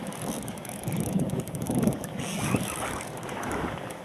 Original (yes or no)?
no